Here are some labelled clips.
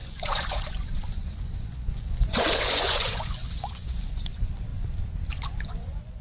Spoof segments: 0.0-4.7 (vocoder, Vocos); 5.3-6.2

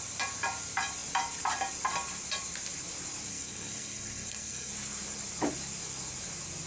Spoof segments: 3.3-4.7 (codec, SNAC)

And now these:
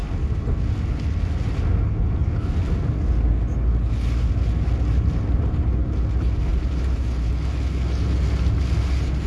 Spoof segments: 6.5-7.3 (vocoder, BigVGAN v2)

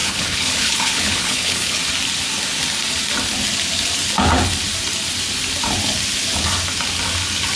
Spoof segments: 0.0-1.8 (codec, HILCodec)

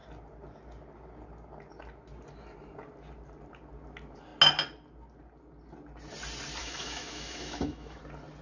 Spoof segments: 6.6-8.0 (autoencoder, DAC-VAE)

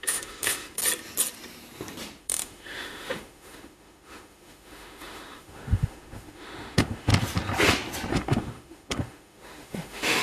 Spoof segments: 0.0-0.8 (autoencoder, DAC-VAE); 2.2-7.1; 8.1-10.2

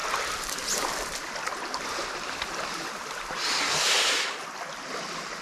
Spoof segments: none

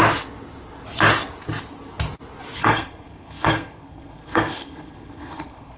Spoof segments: 2.6-5.8 (codec, SNAC)